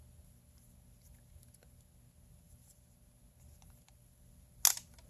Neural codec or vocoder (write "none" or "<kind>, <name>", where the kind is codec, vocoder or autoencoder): none